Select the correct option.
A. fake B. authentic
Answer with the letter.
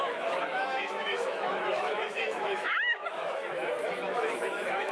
A